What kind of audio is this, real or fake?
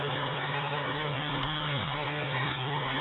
fake